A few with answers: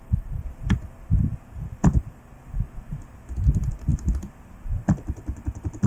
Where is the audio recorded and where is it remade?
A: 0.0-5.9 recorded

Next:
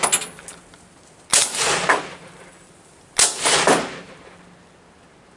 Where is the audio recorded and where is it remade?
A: 0.0-5.4 recorded